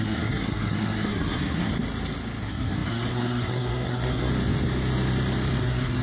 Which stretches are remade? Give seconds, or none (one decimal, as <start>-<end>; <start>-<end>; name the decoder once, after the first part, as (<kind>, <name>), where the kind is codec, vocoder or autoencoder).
0.0-1.7 (codec, SNAC); 2.4-4.3; 5.6-6.0